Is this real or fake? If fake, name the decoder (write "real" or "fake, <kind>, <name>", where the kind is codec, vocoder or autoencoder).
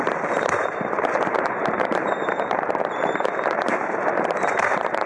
fake, vocoder, BigVGAN v2